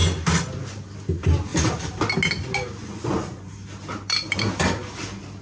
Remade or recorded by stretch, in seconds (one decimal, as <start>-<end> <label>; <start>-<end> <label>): 0.0-2.8 recorded; 2.8-3.5 remade; 3.5-5.4 recorded